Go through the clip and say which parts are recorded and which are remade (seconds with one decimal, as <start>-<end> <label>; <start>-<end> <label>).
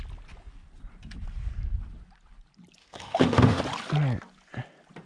0.0-2.8 recorded; 2.8-3.6 remade; 3.6-5.1 recorded